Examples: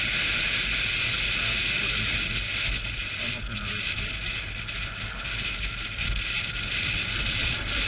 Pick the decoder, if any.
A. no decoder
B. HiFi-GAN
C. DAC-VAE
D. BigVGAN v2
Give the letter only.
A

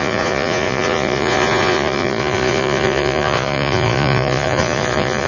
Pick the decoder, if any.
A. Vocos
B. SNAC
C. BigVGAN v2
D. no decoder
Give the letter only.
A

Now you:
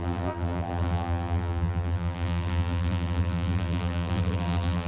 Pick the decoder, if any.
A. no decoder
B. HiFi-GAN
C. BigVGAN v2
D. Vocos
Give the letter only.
C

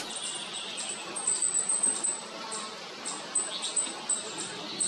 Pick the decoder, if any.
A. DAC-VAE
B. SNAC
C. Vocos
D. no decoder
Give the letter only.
D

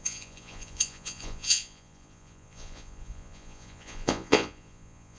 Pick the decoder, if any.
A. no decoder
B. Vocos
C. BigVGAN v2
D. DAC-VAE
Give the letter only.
B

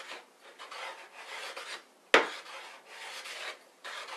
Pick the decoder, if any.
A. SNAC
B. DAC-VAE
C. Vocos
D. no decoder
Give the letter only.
D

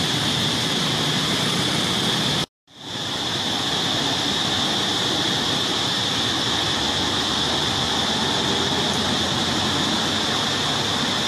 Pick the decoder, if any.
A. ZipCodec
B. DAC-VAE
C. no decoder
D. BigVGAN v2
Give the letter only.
C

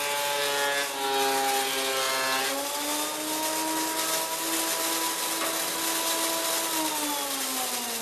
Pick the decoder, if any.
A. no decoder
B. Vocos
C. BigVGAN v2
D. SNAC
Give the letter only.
A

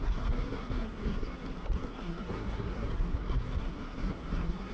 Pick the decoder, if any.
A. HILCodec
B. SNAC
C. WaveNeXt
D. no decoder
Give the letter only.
B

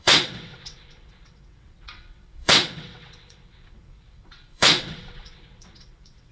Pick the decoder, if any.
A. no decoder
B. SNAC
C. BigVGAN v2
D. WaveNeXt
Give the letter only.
D